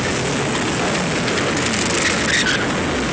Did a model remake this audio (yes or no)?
no